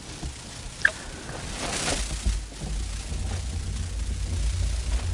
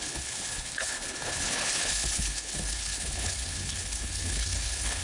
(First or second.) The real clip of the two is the first